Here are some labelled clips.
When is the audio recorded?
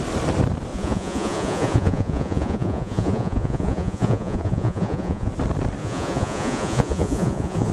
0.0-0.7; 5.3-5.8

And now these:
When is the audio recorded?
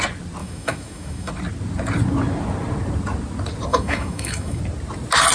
0.0-0.4; 1.3-3.7; 4.6-5.3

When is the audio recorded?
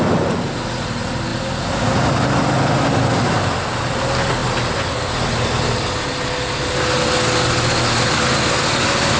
0.0-9.2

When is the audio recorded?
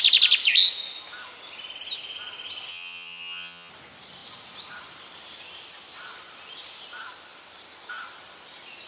0.0-2.7; 3.7-8.9